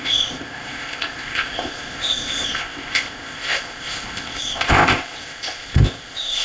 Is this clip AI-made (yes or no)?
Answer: yes